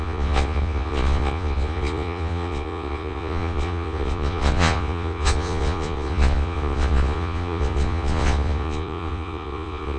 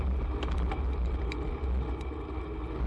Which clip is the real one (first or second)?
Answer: second